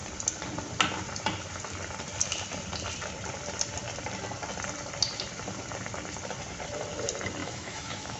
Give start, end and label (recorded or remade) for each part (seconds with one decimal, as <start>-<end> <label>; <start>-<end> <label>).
0.0-7.4 recorded; 7.4-8.2 remade